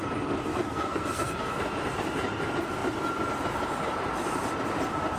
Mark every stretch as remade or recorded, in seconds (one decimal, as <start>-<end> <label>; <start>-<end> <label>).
0.0-0.6 recorded; 0.6-1.5 remade; 1.5-5.2 recorded

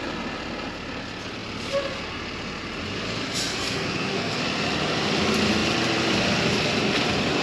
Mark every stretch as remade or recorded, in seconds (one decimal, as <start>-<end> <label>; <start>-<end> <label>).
0.0-3.5 recorded; 3.5-4.4 remade; 4.4-7.4 recorded